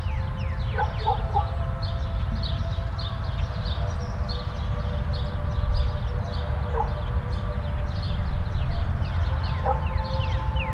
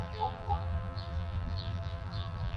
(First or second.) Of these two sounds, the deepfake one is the second